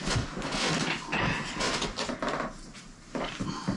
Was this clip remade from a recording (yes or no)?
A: no